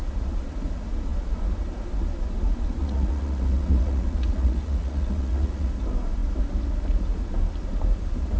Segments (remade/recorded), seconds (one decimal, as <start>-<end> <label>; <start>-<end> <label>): 0.0-2.8 recorded; 2.8-5.7 remade; 5.7-8.4 recorded